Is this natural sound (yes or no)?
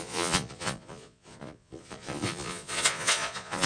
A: no